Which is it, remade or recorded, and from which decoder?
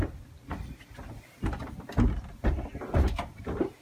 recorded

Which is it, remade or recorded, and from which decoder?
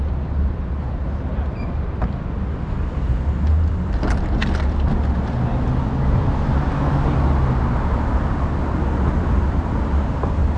recorded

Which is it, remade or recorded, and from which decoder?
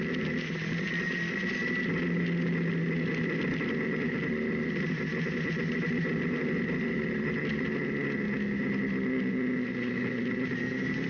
recorded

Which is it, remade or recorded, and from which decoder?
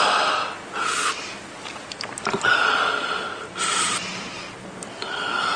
recorded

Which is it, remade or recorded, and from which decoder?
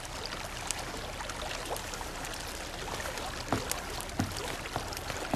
recorded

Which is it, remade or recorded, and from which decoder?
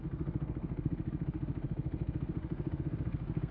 remade, codec, SNAC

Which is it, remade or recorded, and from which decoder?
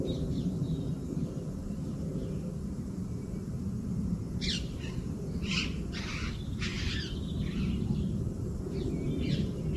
remade, vocoder, BigVGAN v2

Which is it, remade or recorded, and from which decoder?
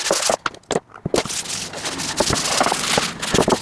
recorded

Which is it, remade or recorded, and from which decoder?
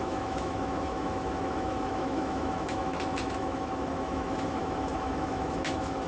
remade, autoencoder, DAC-VAE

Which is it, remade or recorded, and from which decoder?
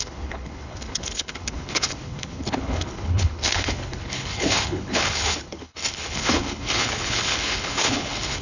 remade, codec, HILCodec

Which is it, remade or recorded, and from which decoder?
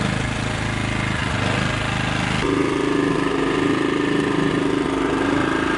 recorded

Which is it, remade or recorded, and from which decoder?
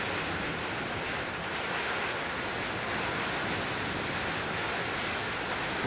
recorded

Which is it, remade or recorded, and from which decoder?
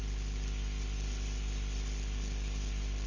remade, vocoder, BigVGAN v2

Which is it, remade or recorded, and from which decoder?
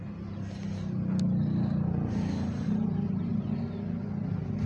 recorded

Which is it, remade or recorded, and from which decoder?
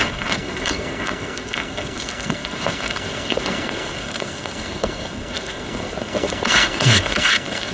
remade, codec, SNAC